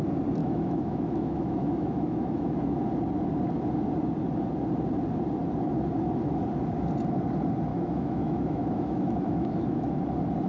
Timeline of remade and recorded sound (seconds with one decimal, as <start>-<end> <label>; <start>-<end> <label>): 0.0-0.4 recorded; 0.4-2.8 remade; 2.8-7.7 recorded; 7.7-10.0 remade; 10.0-10.5 recorded